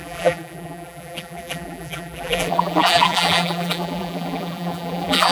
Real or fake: fake